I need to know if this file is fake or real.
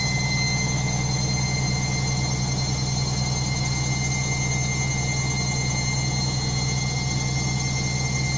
real